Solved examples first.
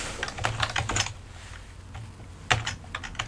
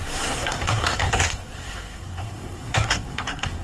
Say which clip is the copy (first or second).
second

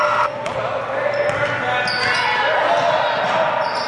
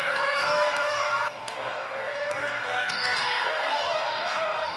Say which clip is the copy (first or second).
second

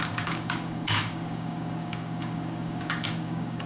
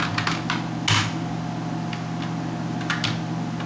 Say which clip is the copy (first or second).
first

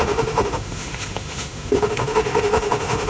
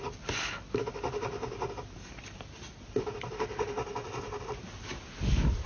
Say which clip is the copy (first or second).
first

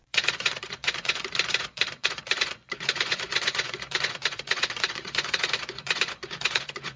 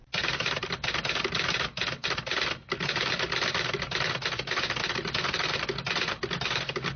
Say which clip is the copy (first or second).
first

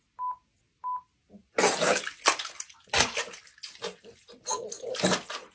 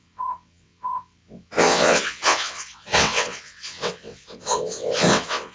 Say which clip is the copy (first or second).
second